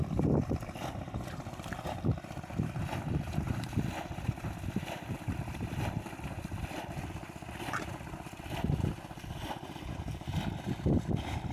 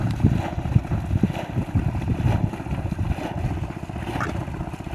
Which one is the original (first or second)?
second